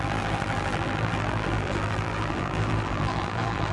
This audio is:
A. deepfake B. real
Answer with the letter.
A